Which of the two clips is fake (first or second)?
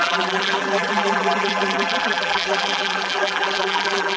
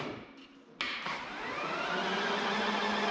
first